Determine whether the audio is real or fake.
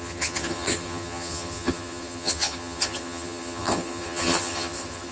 fake